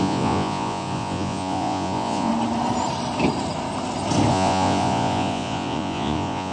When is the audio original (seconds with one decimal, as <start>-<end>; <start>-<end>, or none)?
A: 2.3-4.3